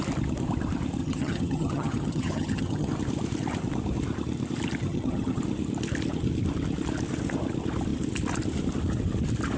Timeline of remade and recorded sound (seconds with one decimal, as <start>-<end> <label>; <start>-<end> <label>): 0.0-1.0 recorded; 1.0-2.9 remade; 2.9-4.8 recorded; 4.8-5.4 remade; 5.4-9.6 recorded